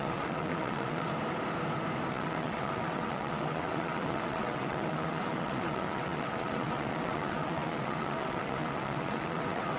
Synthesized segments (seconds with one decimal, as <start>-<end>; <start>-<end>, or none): 0.0-1.1; 2.1-9.8